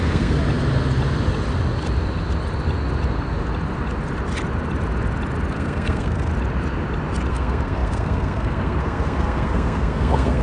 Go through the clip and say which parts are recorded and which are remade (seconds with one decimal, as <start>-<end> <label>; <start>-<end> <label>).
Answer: 0.0-0.4 remade; 0.4-5.5 recorded; 5.5-6.3 remade; 6.3-7.3 recorded; 7.3-10.4 remade